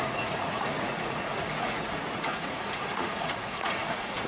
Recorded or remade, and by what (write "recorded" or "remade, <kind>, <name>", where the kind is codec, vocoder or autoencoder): remade, vocoder, Vocos